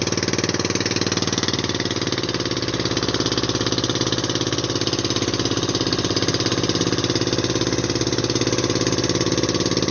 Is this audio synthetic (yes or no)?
no